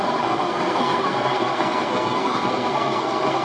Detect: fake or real fake